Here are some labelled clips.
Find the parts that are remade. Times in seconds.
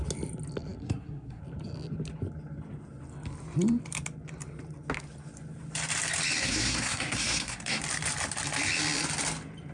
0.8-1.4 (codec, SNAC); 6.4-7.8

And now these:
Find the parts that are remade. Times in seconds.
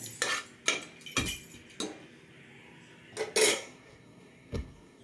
3.5-5.0 (codec, SNAC)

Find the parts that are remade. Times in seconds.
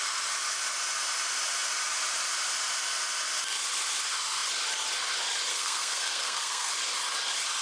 5.5-6.7 (codec, SNAC)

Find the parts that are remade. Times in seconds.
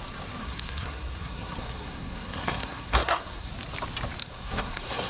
0.4-3.5 (codec, SNAC); 4.2-5.1